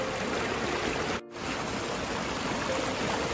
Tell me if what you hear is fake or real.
real